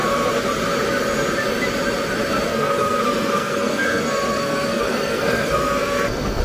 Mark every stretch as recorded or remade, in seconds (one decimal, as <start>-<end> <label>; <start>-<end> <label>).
0.0-2.5 recorded; 2.5-6.4 remade